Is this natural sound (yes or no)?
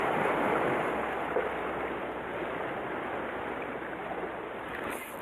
yes